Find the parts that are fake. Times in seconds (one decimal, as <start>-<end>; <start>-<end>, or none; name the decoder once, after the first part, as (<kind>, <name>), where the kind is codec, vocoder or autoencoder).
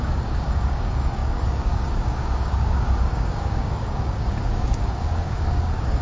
0.0-6.0 (codec, DAC)